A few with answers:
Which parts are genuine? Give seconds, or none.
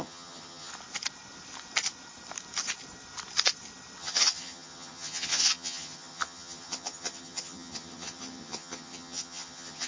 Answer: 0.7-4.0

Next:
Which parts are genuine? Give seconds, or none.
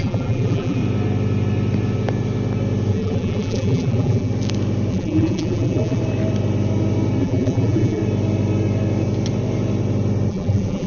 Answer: 0.8-2.9; 4.3-4.9; 6.0-7.2; 8.0-10.3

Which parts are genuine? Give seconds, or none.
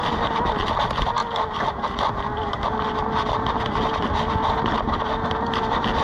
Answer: 0.0-6.0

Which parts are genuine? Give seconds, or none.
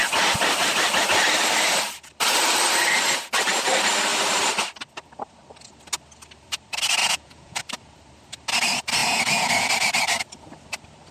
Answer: 0.0-7.0; 7.6-9.0; 9.7-11.1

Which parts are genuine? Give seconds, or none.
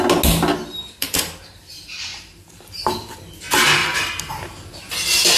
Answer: 0.0-0.6; 1.7-2.1; 3.1-3.8; 4.9-5.4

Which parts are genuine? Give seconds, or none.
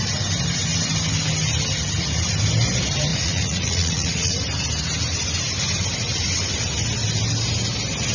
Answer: 0.0-3.1; 4.3-8.1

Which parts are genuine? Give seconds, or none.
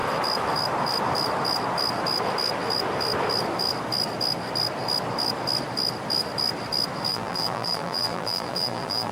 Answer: 0.0-7.1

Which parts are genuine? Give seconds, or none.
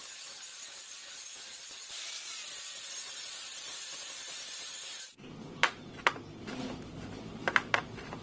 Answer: none